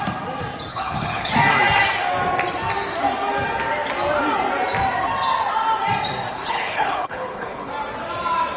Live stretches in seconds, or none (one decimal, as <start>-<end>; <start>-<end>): 0.0-0.7; 1.3-6.3; 7.7-8.6